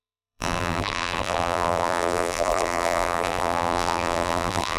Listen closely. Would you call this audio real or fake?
fake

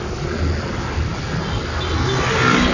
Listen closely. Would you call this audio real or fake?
real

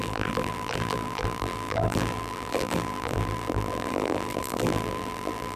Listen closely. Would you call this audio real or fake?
fake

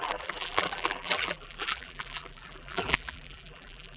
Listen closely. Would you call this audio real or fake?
fake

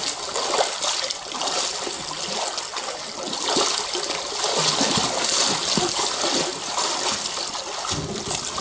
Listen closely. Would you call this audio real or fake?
real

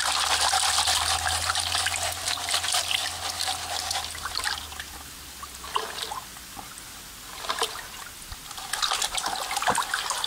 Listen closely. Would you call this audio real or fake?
real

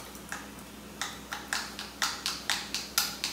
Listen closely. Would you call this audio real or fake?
real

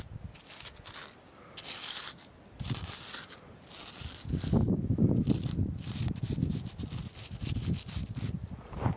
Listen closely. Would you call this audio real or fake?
real